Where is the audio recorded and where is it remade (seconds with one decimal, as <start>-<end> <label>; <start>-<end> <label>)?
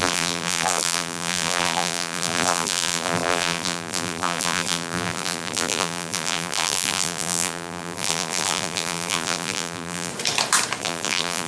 0.0-10.1 remade; 10.1-10.8 recorded; 10.8-11.5 remade